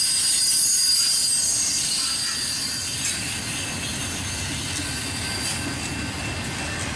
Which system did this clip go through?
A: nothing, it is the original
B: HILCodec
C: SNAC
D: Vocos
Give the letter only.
A